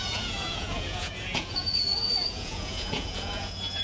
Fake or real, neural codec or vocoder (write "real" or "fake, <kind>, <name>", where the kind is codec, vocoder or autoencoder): fake, vocoder, Vocos